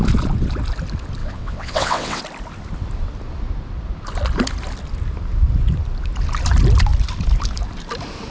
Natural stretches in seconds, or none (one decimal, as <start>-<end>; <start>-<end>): 0.0-1.2; 2.2-8.3